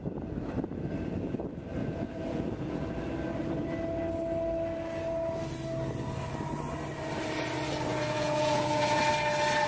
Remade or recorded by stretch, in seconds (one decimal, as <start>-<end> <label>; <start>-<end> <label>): 0.0-1.8 recorded; 1.8-2.9 remade; 2.9-7.9 recorded; 7.9-9.0 remade; 9.0-9.7 recorded